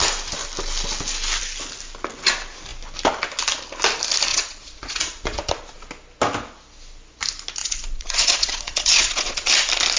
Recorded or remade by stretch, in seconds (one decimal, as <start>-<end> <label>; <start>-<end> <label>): 0.0-4.3 recorded; 4.3-5.5 remade; 5.5-7.6 recorded; 7.6-9.5 remade; 9.5-10.0 recorded